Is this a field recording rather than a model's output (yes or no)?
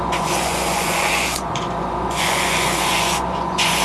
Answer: no